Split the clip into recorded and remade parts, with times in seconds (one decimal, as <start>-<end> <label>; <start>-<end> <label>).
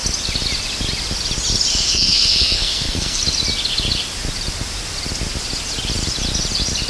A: 0.0-1.7 recorded; 1.7-3.2 remade; 3.2-6.9 recorded